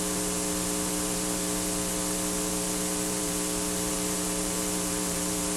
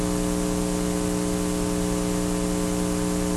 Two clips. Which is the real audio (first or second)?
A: second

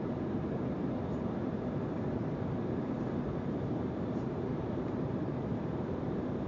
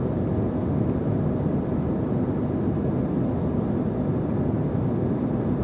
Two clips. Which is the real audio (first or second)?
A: second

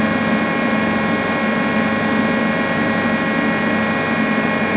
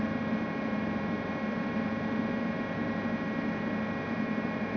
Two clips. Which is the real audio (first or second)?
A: first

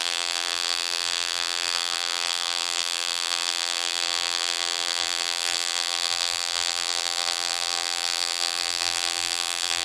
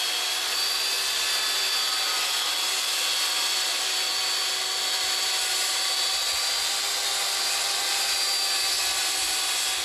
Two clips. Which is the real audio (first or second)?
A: second